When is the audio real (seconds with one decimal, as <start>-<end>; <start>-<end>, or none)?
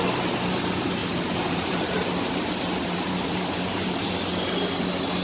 0.0-1.0; 4.1-5.2